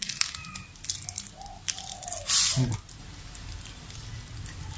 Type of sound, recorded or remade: recorded